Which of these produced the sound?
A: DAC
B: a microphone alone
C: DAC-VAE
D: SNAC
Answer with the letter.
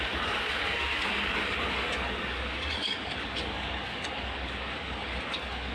A